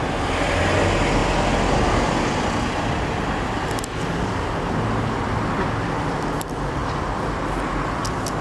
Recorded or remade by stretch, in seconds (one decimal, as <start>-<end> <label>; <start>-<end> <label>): 0.0-8.4 recorded